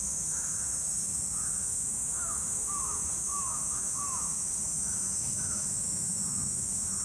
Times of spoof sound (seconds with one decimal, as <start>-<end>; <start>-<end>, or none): 0.0-7.0